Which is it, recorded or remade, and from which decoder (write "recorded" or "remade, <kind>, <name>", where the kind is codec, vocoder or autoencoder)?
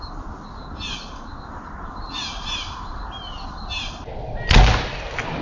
recorded